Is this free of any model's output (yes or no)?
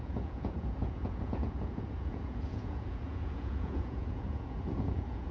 no